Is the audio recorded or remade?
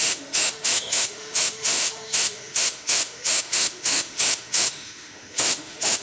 remade